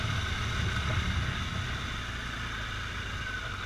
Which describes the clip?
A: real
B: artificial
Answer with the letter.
A